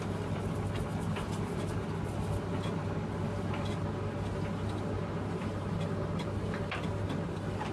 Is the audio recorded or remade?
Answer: recorded